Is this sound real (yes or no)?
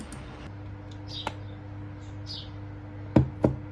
yes